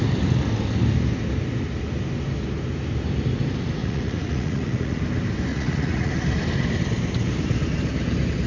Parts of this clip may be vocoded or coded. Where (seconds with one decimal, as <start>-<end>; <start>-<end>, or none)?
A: 3.8-5.0; 5.5-6.1